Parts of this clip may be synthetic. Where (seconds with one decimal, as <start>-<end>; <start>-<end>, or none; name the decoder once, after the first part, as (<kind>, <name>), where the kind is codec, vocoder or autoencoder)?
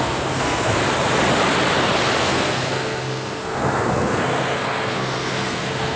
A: 0.0-0.8 (codec, SNAC); 2.2-6.0